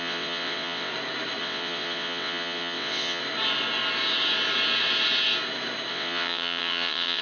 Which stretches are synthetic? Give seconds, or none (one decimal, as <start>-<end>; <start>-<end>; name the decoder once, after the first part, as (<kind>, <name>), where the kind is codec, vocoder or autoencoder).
0.0-0.9 (vocoder, WaveNeXt); 1.4-3.2; 5.9-7.2